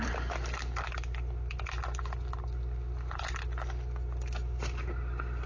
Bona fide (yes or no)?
yes